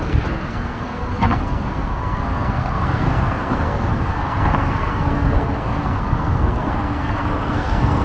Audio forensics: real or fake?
fake